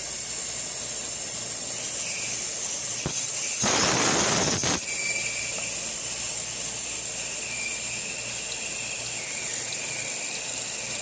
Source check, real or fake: real